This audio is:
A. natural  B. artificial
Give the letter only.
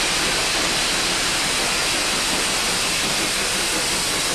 A